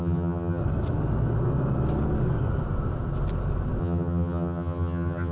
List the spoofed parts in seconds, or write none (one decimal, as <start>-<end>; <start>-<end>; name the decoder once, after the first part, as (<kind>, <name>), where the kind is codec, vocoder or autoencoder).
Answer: 0.0-0.6 (vocoder, HiFi-GAN); 3.8-5.3

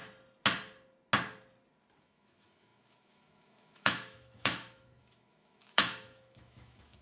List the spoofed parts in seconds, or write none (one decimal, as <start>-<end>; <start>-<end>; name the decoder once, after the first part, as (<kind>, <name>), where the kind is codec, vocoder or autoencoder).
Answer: 2.0-7.0 (autoencoder, DAC-VAE)

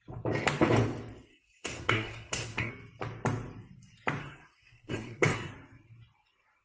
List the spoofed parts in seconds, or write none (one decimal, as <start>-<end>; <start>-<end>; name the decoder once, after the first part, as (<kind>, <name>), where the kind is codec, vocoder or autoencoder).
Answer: 1.3-2.7 (codec, SNAC); 4.2-5.5

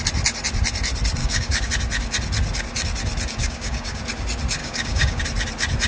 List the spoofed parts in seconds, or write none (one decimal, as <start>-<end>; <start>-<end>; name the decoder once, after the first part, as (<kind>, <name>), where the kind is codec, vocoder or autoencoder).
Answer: 1.2-1.7 (codec, DAC); 3.4-4.0; 4.6-5.2

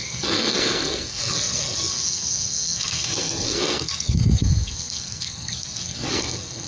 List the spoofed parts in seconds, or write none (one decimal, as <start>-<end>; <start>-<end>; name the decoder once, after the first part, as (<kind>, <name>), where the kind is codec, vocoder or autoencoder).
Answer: 0.0-6.7 (codec, SNAC)

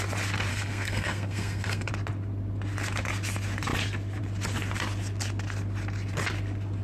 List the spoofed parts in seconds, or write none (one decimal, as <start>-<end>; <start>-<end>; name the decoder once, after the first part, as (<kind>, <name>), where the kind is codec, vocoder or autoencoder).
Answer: 0.5-1.9 (codec, SNAC)